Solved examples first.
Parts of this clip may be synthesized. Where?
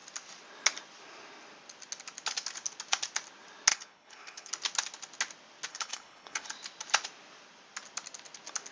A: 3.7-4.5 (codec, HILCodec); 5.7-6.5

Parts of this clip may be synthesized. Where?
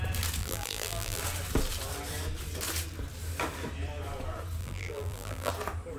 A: 0.4-1.2 (vocoder, BigVGAN v2); 4.6-5.5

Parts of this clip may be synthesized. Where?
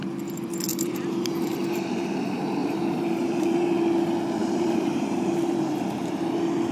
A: 0.7-2.0 (vocoder, BigVGAN v2); 2.6-3.8; 4.4-6.0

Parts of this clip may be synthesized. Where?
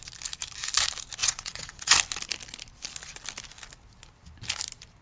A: 1.2-1.9 (vocoder, WaveNeXt)